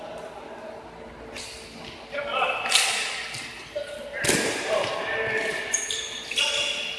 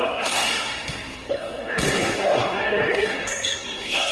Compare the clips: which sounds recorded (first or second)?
first